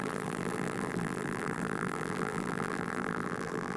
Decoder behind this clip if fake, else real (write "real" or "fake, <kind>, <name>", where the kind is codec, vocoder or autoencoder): fake, vocoder, BigVGAN v2